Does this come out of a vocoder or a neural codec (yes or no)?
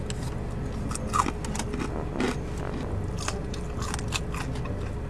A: no